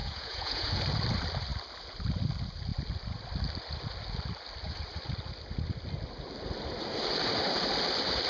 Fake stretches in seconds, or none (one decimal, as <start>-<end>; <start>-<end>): 0.0-0.7